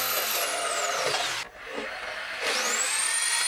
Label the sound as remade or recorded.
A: recorded